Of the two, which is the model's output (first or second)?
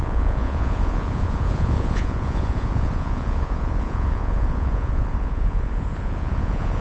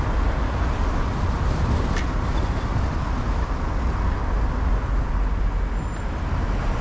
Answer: first